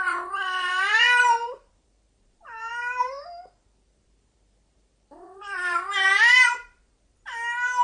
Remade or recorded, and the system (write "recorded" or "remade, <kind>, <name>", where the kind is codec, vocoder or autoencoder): remade, vocoder, BigVGAN v2